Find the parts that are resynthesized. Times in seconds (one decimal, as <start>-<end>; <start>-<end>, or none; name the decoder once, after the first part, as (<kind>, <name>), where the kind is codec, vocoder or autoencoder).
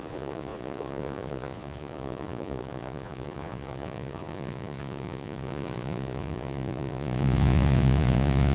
0.0-8.5 (vocoder, Vocos)